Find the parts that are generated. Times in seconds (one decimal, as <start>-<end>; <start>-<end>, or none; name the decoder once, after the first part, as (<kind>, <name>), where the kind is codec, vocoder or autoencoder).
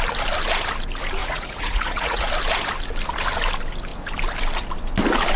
1.2-2.3 (vocoder, Vocos)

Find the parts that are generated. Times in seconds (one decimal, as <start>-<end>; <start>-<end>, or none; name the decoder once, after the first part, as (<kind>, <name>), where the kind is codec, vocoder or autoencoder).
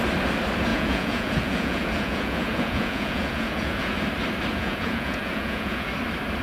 0.7-4.0 (vocoder, Vocos); 4.5-5.9